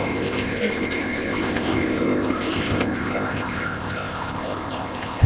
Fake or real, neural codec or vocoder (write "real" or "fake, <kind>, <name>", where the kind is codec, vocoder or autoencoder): fake, codec, ZipCodec